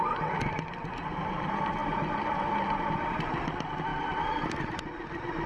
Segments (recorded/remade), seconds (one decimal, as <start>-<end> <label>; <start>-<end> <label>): 0.0-1.8 recorded; 1.8-2.4 remade; 2.4-5.5 recorded